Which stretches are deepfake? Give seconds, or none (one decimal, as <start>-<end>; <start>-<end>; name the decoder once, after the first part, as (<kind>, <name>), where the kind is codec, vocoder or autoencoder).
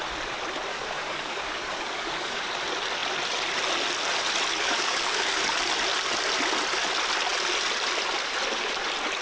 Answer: 0.7-2.4 (codec, DAC); 4.5-5.4